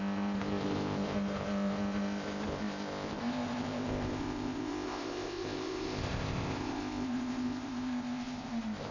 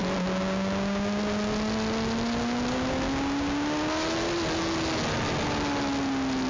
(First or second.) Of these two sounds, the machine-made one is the first